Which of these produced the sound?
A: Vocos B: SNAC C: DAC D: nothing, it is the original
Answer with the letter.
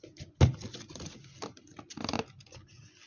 D